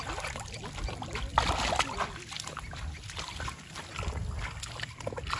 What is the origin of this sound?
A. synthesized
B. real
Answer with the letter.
B